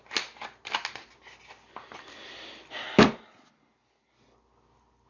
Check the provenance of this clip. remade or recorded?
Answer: recorded